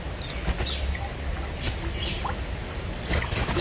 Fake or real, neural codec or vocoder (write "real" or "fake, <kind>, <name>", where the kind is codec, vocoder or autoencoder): real